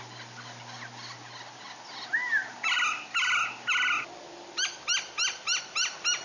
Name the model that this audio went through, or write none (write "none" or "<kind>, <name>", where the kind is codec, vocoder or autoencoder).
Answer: none